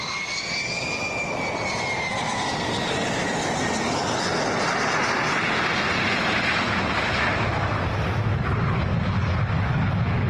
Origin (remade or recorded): recorded